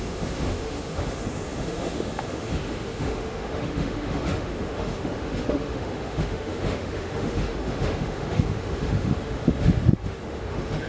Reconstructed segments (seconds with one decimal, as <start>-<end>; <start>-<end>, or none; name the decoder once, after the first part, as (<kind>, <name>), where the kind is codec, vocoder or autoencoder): 0.0-10.9 (autoencoder, DAC-VAE)